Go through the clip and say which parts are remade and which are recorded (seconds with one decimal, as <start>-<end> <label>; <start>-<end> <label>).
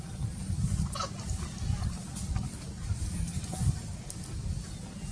0.0-5.1 recorded